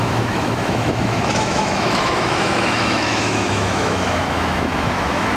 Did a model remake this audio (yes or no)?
yes